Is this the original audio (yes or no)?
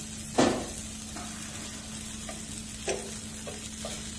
yes